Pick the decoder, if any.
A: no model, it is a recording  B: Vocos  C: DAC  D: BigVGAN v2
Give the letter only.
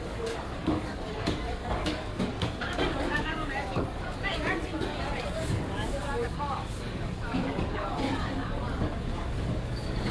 C